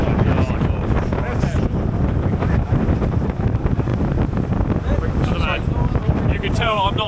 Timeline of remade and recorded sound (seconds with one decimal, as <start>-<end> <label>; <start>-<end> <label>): 0.0-3.0 recorded; 3.0-3.9 remade; 3.9-6.2 recorded; 6.2-7.1 remade